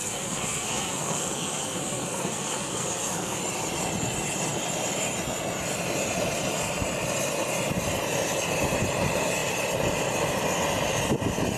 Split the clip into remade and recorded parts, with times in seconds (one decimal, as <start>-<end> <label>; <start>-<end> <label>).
0.0-3.4 remade; 3.4-11.6 recorded